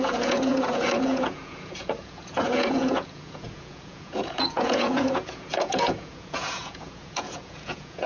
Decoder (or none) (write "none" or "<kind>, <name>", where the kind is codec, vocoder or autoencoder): vocoder, Vocos